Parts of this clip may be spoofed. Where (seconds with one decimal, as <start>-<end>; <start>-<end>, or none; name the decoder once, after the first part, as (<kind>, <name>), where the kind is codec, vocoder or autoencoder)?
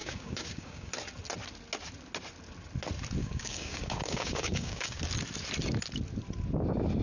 0.0-0.9 (codec, DAC); 3.2-5.0